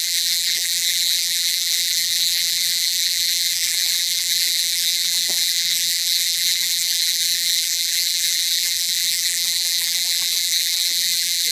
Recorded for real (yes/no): no